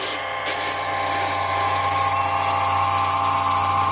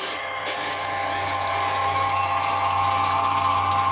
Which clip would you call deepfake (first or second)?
second